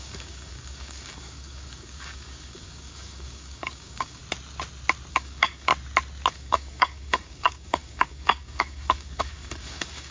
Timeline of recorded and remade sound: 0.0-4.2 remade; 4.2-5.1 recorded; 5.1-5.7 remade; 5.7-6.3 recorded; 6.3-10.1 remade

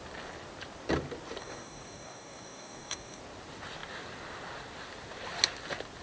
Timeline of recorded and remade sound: 0.0-1.4 recorded; 1.4-3.2 remade; 3.2-6.0 recorded